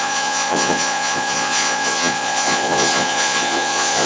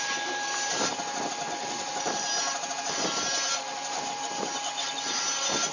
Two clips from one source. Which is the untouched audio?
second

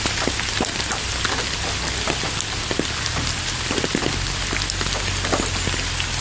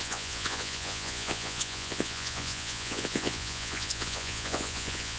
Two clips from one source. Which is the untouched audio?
first